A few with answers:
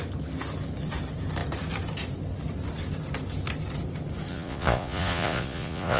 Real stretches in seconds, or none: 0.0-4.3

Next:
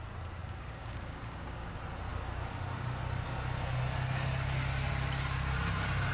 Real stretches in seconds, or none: 0.0-0.4; 1.7-6.1

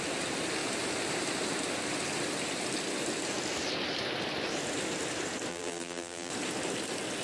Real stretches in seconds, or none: 0.0-5.5; 6.3-7.2

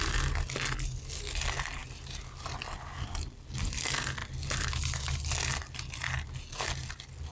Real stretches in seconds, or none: 0.0-7.3

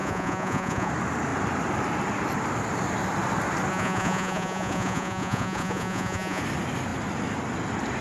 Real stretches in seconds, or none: 0.9-3.7; 6.4-8.0

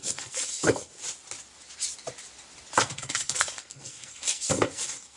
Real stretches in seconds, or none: 0.9-2.8

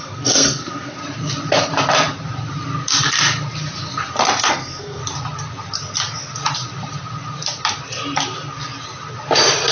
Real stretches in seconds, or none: 1.0-4.5; 5.0-9.7